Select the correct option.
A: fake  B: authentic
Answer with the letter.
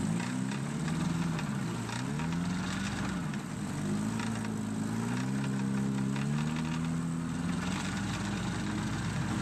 B